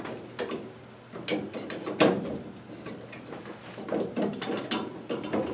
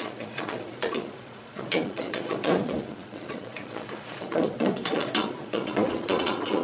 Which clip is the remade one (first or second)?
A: second